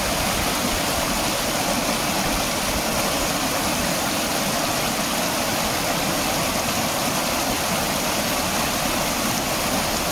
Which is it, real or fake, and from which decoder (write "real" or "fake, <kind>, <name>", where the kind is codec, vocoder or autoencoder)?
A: real